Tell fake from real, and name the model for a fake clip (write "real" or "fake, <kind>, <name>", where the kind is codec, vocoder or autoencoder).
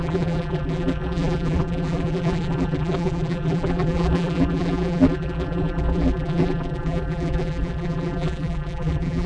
fake, vocoder, BigVGAN v2